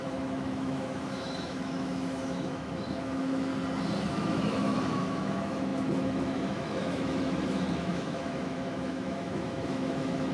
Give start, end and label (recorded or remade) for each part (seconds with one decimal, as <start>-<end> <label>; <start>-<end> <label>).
0.0-3.5 remade; 3.5-4.1 recorded; 4.1-10.3 remade